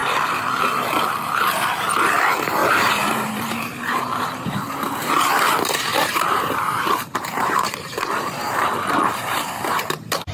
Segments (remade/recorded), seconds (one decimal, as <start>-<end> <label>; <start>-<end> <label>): 0.0-2.6 recorded; 2.6-5.1 remade; 5.1-5.9 recorded; 5.9-9.6 remade; 9.6-10.3 recorded